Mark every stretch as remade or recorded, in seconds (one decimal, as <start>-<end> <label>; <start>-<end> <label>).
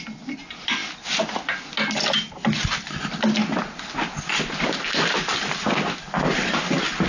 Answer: 0.0-7.1 recorded